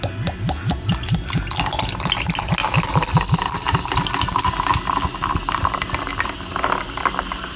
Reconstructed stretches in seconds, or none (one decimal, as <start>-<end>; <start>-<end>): none